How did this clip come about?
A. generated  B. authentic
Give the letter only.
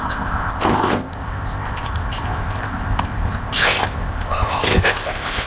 A